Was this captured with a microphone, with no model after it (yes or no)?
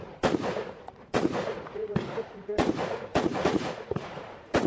no